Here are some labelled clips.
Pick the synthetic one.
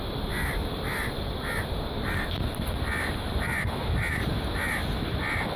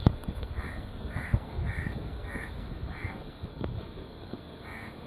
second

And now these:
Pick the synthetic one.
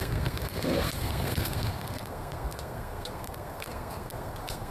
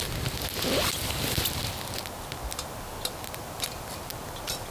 first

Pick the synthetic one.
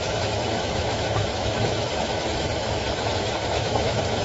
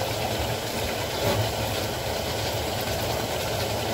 first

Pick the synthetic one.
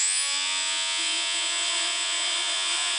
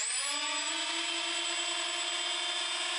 first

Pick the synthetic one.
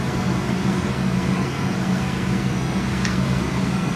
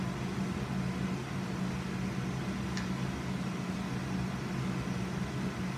first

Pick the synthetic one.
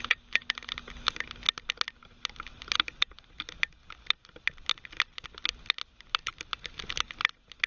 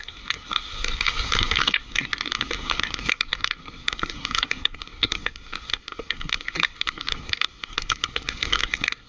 second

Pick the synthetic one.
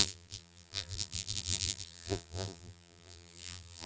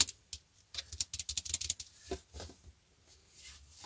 first